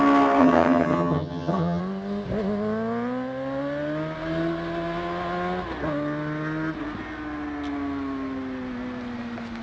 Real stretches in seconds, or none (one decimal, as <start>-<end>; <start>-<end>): 0.0-0.4; 1.8-9.6